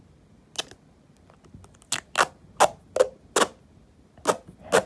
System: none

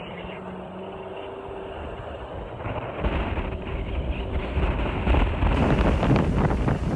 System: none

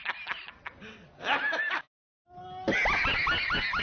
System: none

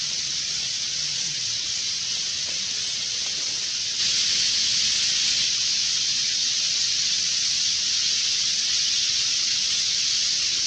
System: vocoder, WaveNeXt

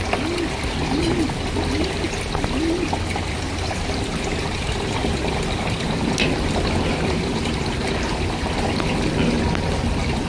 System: none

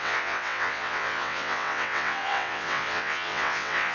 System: vocoder, WaveNeXt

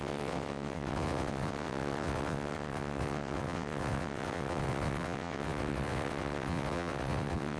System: vocoder, WaveNeXt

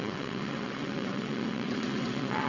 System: vocoder, WaveNeXt